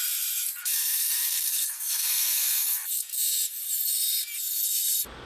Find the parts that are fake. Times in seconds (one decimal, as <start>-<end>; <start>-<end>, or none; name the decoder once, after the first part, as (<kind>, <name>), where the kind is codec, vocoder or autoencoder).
0.6-3.6 (codec, SNAC)